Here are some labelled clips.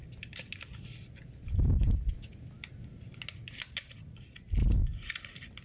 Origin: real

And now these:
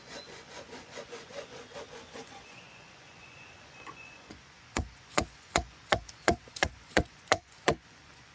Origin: fake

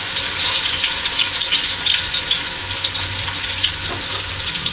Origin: fake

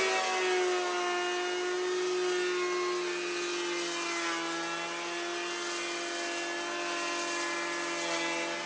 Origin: real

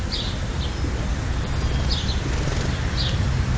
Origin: real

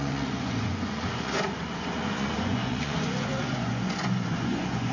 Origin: fake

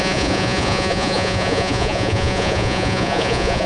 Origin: fake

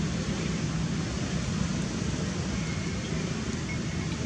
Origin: real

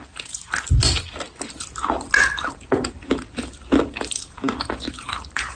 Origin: real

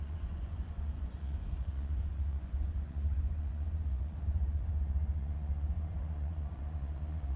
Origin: fake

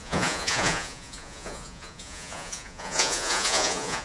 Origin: fake